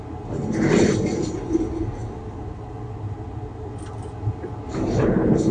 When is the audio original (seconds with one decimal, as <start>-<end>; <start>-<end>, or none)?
0.0-5.5